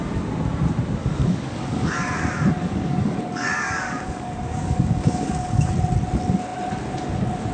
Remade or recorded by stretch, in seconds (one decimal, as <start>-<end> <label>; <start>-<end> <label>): 0.0-1.0 recorded; 1.0-2.1 remade; 2.1-2.6 recorded; 2.6-5.7 remade; 5.7-7.5 recorded